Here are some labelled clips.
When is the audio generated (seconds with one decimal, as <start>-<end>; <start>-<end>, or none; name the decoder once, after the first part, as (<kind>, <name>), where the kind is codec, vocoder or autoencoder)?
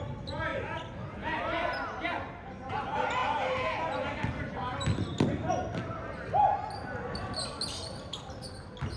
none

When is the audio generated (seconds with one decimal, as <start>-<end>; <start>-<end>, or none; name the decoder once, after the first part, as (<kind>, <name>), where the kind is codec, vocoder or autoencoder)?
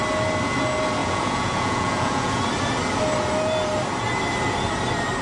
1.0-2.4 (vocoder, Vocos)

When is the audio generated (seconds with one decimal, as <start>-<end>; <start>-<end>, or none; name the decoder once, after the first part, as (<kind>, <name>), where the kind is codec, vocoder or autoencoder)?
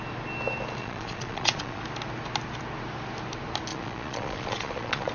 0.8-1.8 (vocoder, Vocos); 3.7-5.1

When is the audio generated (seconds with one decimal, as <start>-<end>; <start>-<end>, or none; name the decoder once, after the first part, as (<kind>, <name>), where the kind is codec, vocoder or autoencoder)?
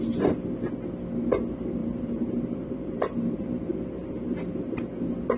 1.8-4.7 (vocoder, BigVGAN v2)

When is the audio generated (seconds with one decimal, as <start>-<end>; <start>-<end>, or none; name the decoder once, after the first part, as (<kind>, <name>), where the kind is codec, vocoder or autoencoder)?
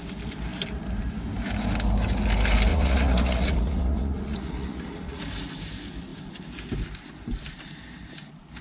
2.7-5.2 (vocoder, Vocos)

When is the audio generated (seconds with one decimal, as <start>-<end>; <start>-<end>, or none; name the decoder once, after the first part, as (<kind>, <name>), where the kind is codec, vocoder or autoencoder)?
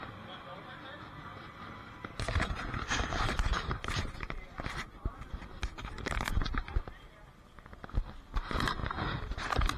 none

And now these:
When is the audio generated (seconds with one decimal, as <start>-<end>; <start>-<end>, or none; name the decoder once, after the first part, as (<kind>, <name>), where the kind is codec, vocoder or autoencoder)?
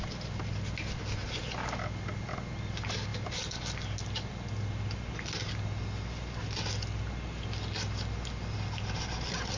none